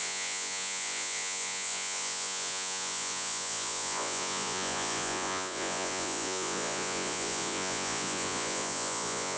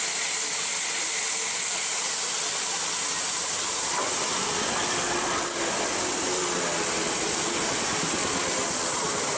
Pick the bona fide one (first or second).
second